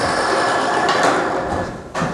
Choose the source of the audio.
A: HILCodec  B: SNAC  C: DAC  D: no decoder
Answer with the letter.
D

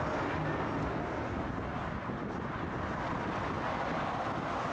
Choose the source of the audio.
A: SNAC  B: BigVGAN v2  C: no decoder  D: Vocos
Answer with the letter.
C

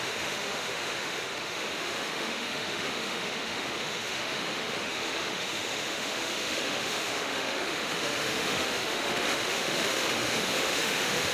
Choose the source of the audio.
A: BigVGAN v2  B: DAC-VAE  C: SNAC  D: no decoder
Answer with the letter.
B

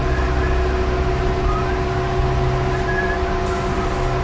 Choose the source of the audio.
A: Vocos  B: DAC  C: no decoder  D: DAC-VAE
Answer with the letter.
C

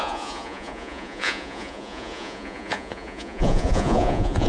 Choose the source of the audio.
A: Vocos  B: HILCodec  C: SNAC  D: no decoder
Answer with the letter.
A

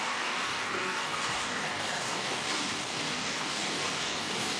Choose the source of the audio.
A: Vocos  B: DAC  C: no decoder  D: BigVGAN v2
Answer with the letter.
B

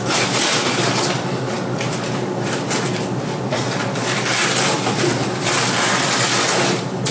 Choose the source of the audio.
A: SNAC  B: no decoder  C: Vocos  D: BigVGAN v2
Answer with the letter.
B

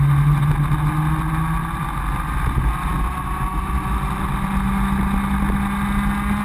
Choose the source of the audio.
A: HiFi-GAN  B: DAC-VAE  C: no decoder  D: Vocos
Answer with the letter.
C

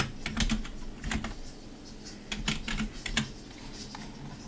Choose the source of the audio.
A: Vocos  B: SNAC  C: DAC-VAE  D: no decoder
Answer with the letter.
D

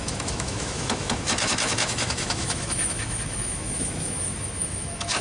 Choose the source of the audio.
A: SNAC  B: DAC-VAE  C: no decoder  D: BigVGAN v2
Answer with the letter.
B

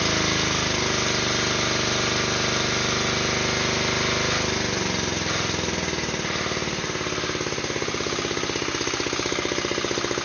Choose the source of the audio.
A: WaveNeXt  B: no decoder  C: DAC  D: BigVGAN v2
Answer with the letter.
B